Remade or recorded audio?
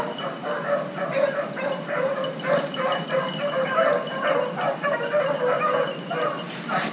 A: recorded